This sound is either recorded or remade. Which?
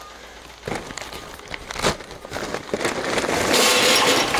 recorded